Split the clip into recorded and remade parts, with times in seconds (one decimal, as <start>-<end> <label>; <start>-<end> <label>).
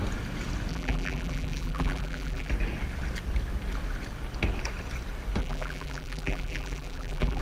0.0-0.7 recorded; 0.7-2.5 remade; 2.5-5.4 recorded; 5.4-7.4 remade